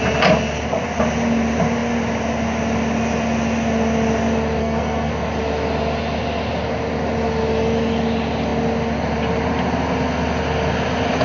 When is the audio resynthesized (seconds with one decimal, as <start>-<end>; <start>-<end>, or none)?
4.6-5.1